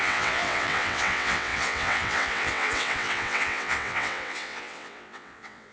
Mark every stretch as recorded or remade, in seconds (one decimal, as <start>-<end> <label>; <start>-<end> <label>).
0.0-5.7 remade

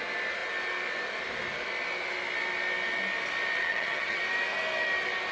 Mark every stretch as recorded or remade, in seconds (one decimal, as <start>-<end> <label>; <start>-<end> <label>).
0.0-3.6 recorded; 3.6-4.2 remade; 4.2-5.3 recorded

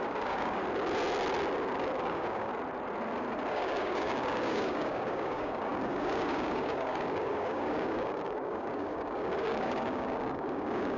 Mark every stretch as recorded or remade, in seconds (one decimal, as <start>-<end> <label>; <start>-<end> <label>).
0.0-0.6 remade; 0.6-2.0 recorded; 2.0-2.5 remade; 2.5-3.5 recorded; 3.5-11.0 remade

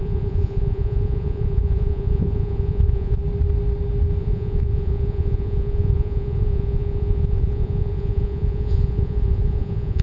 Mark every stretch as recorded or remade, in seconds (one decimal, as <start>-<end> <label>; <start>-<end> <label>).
0.0-3.2 remade; 3.2-4.2 recorded; 4.2-10.0 remade

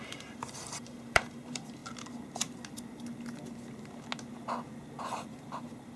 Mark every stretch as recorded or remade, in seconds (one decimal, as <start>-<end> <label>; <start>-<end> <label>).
0.0-1.8 remade; 1.8-5.0 recorded; 5.0-6.0 remade

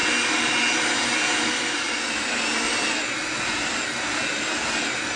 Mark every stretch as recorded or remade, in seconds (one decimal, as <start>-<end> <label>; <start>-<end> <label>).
0.0-5.2 recorded